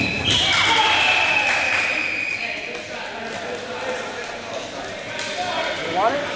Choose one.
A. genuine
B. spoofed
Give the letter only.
A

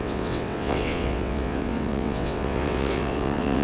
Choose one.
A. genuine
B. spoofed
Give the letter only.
B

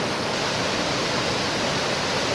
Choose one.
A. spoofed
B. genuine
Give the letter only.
B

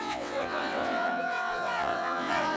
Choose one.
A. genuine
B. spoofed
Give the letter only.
B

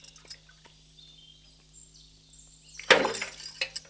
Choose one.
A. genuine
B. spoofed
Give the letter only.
A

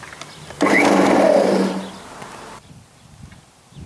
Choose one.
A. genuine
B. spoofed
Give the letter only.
A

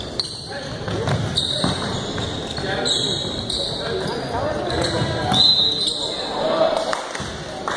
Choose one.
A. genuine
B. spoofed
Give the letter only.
A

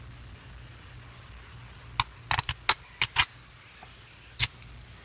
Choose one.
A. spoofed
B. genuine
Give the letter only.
B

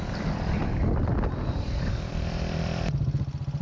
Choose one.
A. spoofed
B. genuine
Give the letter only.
B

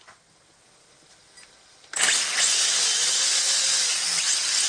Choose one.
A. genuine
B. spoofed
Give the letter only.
A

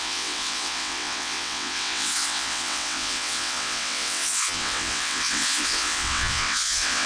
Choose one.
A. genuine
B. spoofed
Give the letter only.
B